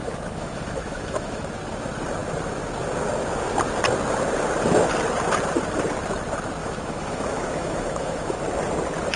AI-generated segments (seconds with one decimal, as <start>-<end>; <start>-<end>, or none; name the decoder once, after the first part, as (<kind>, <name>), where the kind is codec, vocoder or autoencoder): 0.0-1.4 (autoencoder, DAC-VAE); 6.6-8.4